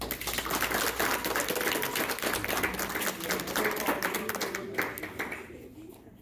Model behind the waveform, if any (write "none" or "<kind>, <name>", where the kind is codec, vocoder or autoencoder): none